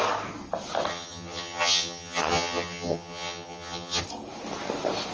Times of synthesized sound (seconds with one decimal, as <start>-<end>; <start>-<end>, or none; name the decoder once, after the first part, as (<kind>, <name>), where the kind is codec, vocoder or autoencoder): 0.9-4.0 (vocoder, HiFi-GAN)